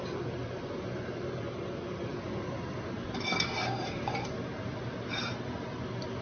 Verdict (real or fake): real